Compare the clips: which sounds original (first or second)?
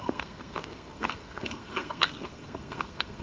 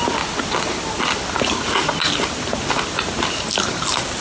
second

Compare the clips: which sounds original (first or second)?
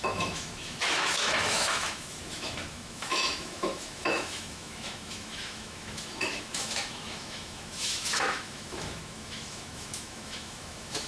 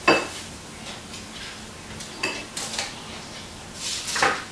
second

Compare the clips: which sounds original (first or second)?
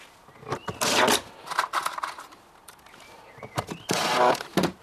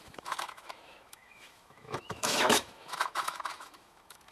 first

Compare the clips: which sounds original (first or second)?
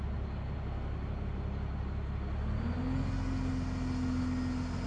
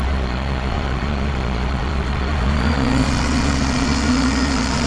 first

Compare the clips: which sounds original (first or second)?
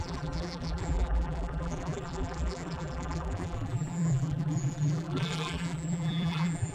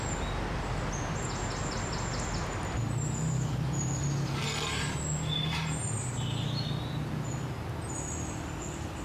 second